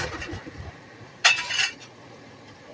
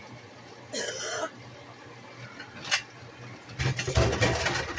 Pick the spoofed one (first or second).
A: first